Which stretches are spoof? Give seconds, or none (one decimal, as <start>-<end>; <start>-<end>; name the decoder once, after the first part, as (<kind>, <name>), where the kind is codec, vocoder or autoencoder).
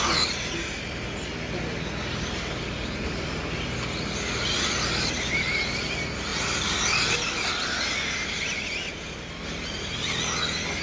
none